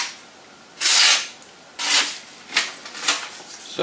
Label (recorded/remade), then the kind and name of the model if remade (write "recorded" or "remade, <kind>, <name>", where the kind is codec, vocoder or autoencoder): recorded